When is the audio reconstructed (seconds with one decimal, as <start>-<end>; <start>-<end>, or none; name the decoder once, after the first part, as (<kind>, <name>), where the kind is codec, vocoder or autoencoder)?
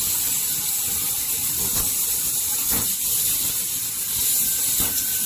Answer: 1.7-2.3 (vocoder, BigVGAN v2)